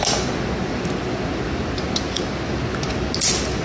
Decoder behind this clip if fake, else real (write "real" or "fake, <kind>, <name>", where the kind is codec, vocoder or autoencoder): real